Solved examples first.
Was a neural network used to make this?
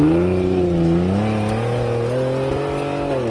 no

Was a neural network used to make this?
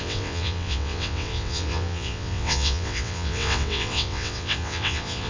yes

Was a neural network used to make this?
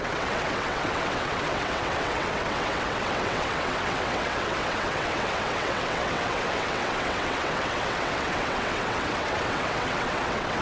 yes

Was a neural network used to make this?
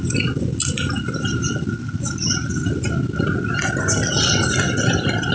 no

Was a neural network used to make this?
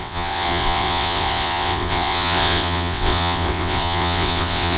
yes